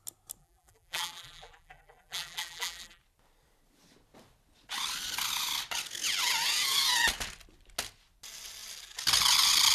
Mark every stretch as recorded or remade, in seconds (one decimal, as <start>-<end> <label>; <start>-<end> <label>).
0.0-0.4 recorded; 0.4-3.0 remade; 3.0-9.7 recorded